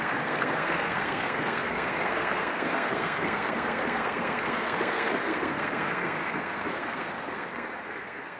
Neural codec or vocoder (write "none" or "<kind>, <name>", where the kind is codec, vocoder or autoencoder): codec, SNAC